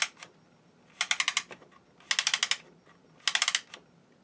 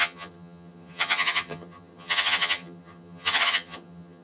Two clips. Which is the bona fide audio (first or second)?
first